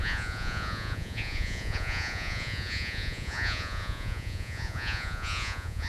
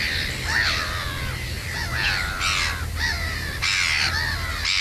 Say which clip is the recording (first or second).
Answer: second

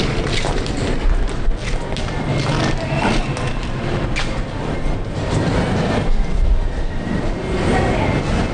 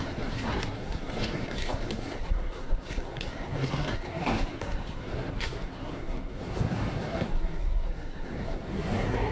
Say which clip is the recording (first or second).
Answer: first